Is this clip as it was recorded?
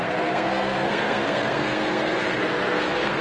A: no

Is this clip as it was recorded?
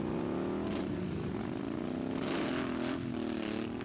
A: yes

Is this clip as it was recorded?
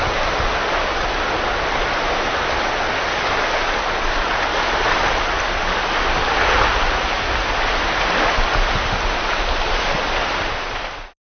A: yes